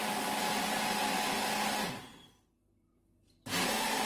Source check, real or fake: real